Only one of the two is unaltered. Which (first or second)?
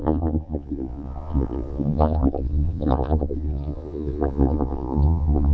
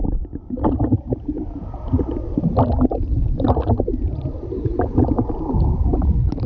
second